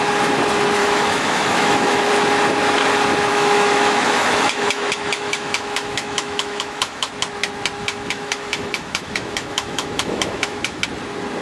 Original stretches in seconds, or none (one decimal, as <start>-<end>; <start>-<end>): 0.0-0.8; 2.1-3.3; 7.1-7.8; 10.8-11.4